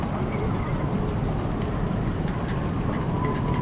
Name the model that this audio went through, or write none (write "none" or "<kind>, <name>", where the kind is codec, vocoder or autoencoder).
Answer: vocoder, BigVGAN v2